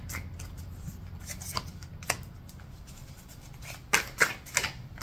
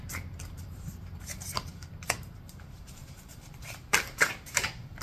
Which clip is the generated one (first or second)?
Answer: second